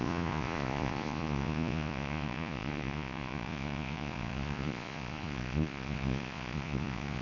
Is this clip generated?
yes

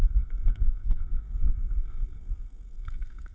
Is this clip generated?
yes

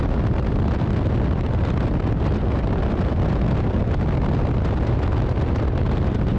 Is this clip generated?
no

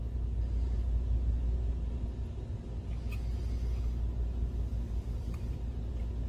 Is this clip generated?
no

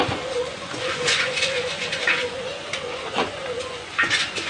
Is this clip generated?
yes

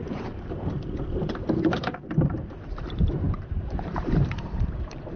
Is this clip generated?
yes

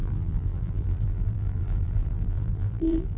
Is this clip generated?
yes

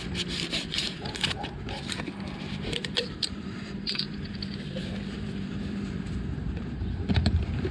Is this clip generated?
yes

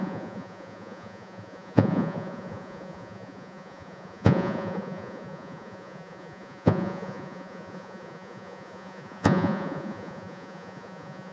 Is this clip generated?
yes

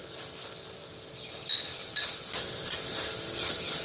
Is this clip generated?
no